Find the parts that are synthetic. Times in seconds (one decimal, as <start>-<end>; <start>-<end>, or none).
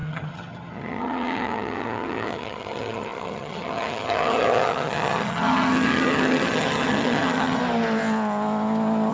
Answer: 0.0-7.6